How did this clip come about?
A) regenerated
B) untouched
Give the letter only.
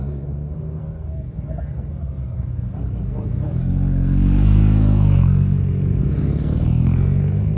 A